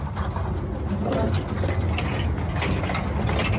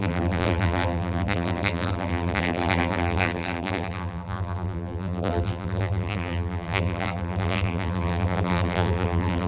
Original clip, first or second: first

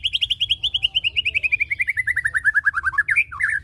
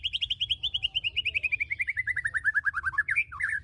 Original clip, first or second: first